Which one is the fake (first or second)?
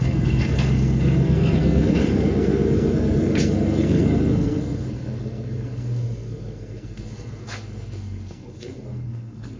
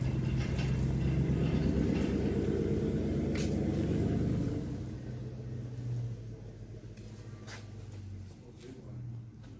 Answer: first